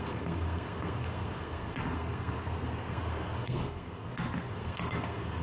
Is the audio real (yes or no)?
no